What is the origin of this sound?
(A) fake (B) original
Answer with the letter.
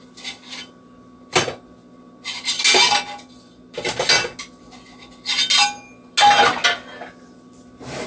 B